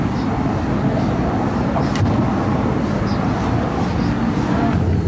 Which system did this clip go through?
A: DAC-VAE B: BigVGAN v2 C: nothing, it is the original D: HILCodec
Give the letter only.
C